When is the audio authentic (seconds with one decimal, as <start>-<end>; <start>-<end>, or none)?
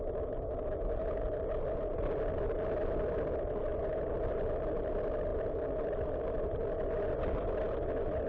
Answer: 0.0-8.3